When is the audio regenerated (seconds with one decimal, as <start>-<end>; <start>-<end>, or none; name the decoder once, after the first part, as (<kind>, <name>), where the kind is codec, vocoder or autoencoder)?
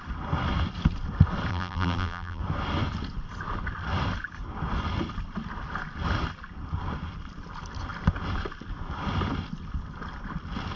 1.5-2.4 (vocoder, BigVGAN v2)